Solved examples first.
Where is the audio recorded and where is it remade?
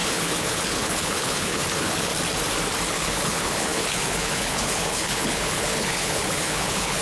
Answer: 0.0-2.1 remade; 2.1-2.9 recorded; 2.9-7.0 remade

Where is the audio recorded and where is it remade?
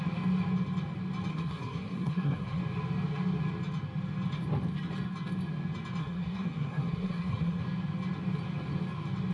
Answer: 0.0-1.3 recorded; 1.3-2.6 remade; 2.6-6.0 recorded; 6.0-7.6 remade; 7.6-9.3 recorded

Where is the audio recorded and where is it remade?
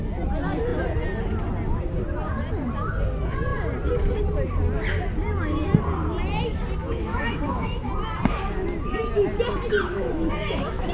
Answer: 0.0-6.8 recorded; 6.8-7.9 remade; 7.9-9.9 recorded; 9.9-10.9 remade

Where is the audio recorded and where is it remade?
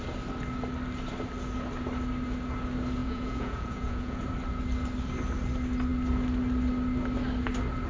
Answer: 0.0-3.0 recorded; 3.0-4.2 remade; 4.2-7.9 recorded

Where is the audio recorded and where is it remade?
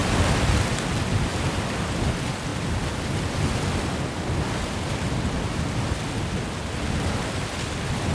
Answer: 0.0-8.1 recorded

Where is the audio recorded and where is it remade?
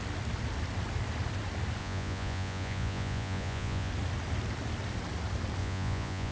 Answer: 0.0-1.8 recorded; 1.8-3.9 remade; 3.9-5.6 recorded; 5.6-6.3 remade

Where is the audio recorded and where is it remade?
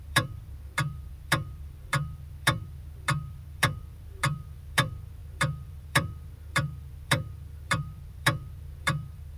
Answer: 0.0-9.4 remade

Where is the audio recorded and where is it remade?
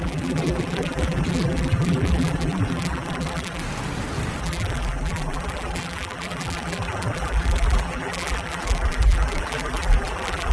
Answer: 0.0-3.6 remade; 3.6-4.4 recorded; 4.4-10.5 remade